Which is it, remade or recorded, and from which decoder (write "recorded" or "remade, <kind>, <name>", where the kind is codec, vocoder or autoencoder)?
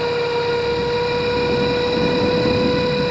recorded